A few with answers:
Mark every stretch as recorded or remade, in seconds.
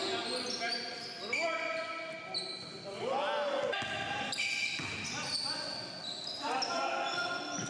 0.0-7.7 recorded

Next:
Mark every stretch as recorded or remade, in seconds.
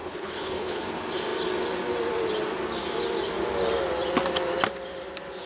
0.0-0.8 remade; 0.8-5.5 recorded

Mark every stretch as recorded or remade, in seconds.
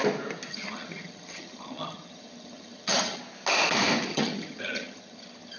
0.0-0.5 recorded; 0.5-3.2 remade; 3.2-4.1 recorded; 4.1-5.6 remade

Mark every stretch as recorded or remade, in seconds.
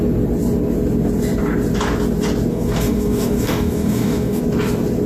0.0-2.5 recorded; 2.5-4.4 remade; 4.4-5.1 recorded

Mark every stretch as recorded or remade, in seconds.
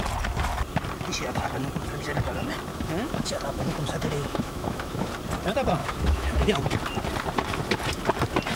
0.0-2.7 recorded; 2.7-5.1 remade; 5.1-5.8 recorded; 5.8-6.6 remade; 6.6-8.6 recorded